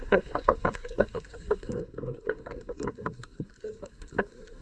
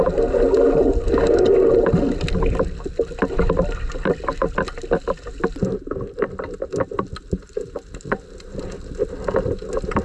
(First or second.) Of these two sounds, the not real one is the first